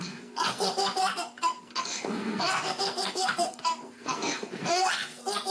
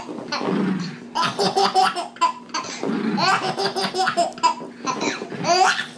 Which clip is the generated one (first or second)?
first